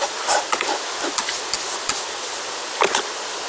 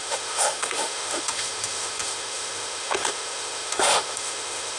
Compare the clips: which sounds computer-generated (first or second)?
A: second